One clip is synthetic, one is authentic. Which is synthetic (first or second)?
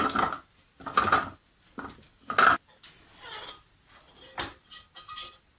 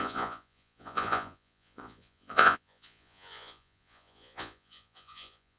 second